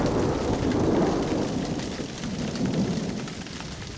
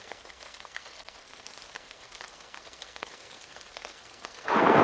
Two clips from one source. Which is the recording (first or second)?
first